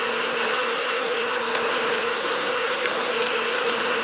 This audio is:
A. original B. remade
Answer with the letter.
B